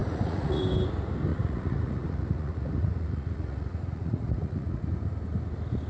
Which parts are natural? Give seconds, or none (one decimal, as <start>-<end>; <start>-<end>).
0.6-1.3; 4.8-5.9